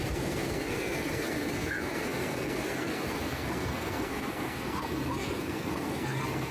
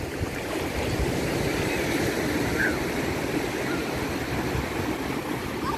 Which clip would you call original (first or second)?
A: second